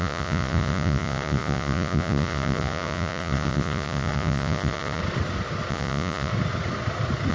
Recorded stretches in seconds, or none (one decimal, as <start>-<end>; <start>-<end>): 5.0-5.7; 6.3-7.3